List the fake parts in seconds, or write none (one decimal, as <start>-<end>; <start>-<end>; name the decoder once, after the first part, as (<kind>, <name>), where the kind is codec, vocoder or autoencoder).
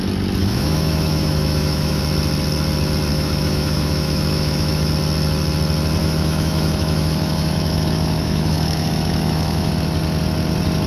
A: 0.4-2.0 (autoencoder, DAC-VAE); 3.1-4.9; 6.0-9.7